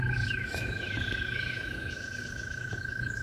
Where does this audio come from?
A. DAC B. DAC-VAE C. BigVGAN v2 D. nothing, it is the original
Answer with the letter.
B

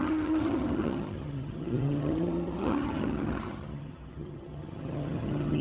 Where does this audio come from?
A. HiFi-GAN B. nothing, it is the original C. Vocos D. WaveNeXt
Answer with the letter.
A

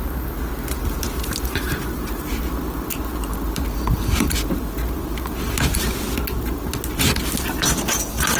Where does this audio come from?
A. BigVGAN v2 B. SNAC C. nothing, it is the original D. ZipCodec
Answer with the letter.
C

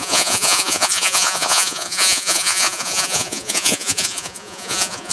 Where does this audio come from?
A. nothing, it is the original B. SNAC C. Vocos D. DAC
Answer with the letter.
C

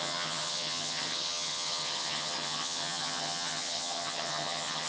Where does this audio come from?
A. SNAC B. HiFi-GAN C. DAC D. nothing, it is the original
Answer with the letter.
B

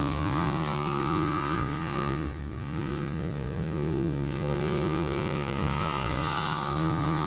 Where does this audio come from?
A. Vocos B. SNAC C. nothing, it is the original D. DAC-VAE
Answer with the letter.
A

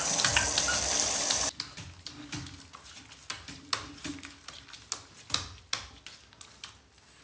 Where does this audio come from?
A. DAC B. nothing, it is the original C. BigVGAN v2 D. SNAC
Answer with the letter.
B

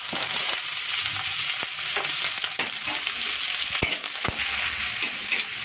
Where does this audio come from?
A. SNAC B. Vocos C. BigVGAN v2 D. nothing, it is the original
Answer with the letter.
D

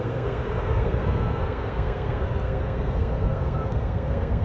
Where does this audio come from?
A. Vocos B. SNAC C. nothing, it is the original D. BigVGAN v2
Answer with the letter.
B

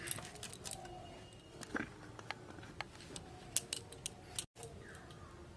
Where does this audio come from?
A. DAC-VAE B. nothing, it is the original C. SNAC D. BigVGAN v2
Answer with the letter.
B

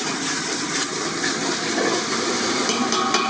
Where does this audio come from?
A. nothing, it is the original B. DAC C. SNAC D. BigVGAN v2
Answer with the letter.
D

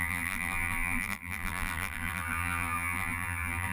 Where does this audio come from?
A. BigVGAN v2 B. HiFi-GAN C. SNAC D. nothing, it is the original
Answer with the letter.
A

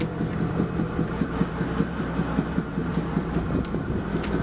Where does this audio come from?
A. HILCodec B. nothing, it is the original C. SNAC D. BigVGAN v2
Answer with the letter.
D